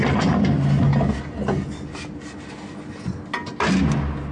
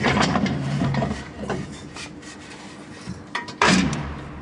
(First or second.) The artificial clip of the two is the second